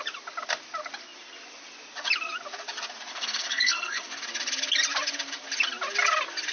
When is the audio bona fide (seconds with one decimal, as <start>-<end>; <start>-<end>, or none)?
0.0-3.1; 4.2-6.5